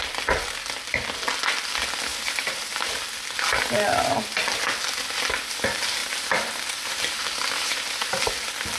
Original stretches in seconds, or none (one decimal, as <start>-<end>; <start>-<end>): 0.0-2.1; 2.9-6.0; 8.3-8.8

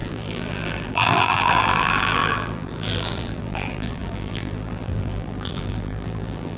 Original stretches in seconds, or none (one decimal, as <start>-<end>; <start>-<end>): none

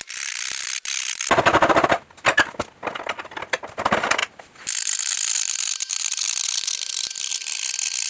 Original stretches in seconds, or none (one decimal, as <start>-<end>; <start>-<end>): 0.0-8.1

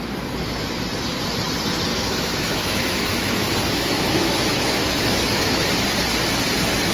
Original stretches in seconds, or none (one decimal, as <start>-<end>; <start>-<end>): 0.0-1.9; 5.7-6.9

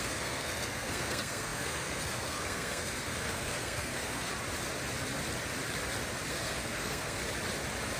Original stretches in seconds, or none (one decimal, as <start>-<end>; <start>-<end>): 4.3-6.3; 7.2-8.0

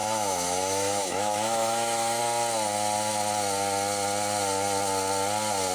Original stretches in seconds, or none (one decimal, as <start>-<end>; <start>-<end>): 2.2-5.7

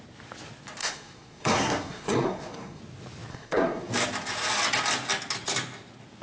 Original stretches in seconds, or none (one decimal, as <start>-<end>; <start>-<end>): 0.0-0.8; 2.8-3.3; 3.9-6.2